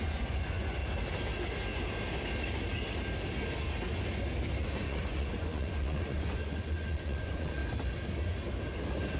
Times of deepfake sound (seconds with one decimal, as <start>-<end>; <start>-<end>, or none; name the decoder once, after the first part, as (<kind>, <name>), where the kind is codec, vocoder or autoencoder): 0.0-0.8 (vocoder, Vocos); 4.6-7.6